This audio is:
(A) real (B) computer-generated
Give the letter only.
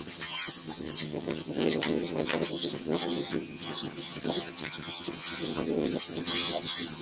B